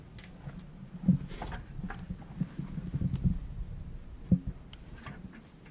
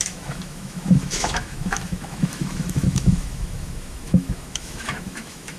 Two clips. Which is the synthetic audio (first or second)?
second